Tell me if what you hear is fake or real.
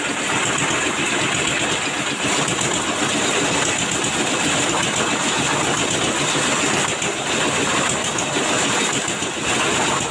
real